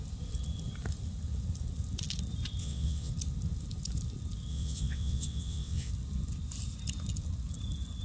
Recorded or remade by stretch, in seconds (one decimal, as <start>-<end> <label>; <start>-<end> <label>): 0.0-2.6 recorded; 2.6-3.1 remade; 3.1-4.5 recorded; 4.5-5.9 remade; 5.9-8.0 recorded